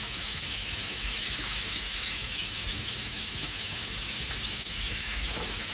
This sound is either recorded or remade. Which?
remade